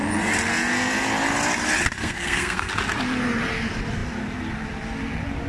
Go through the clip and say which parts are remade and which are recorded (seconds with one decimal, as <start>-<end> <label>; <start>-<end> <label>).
0.0-2.0 recorded; 2.0-2.7 remade; 2.7-5.5 recorded